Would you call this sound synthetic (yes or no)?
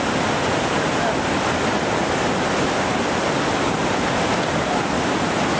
no